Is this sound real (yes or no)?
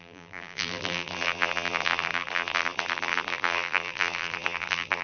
no